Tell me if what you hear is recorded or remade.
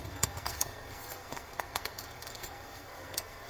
remade